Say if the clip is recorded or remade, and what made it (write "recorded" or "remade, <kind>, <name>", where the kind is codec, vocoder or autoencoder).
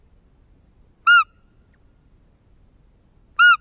recorded